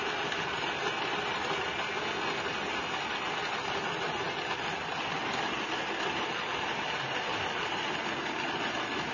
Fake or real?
real